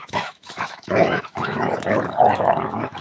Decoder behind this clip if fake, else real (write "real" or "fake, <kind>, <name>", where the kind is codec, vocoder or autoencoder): fake, autoencoder, DAC-VAE